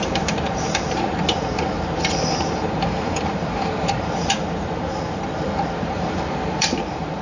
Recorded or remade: remade